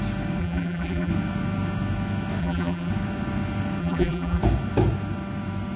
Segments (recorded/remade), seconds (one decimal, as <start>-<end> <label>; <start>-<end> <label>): 0.0-0.4 recorded; 0.4-1.1 remade; 1.1-2.4 recorded; 2.4-2.9 remade; 2.9-3.8 recorded; 3.8-4.4 remade; 4.4-5.8 recorded